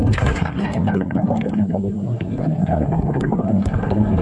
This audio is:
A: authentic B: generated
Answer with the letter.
B